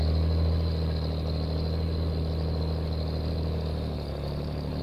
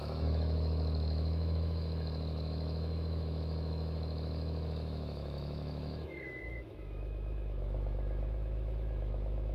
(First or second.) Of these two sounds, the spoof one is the second